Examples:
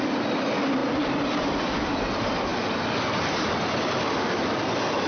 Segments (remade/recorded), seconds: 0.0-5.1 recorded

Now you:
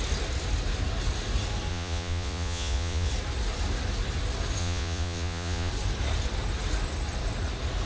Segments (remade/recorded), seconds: 0.0-1.7 recorded; 1.7-3.1 remade; 3.1-4.6 recorded; 4.6-5.7 remade; 5.7-7.9 recorded

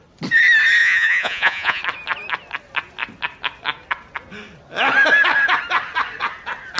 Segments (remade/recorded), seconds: 0.0-0.8 recorded; 0.8-1.8 remade; 1.8-6.8 recorded

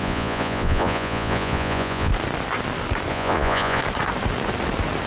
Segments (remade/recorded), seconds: 0.0-2.1 remade; 2.1-3.1 recorded; 3.1-3.8 remade; 3.8-5.1 recorded

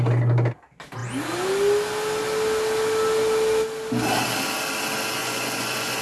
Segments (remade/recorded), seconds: 0.0-5.2 recorded; 5.2-6.0 remade

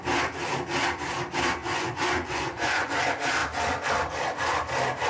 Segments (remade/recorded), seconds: 0.0-1.6 recorded; 1.6-2.9 remade; 2.9-5.1 recorded